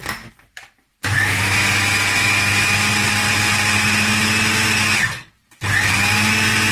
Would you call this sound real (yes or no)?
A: yes